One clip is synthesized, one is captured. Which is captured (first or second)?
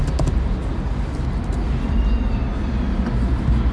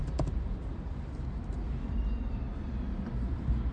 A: first